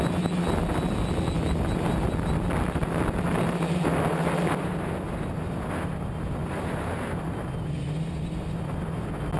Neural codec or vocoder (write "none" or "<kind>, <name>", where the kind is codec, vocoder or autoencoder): none